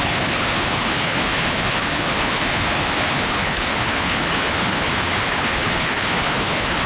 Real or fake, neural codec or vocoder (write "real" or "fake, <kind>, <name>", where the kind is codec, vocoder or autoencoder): fake, codec, HILCodec